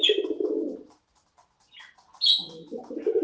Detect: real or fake real